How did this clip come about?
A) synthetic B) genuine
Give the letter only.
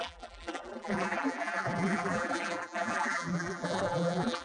A